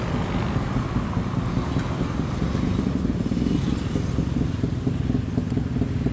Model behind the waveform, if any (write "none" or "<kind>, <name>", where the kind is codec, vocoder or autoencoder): none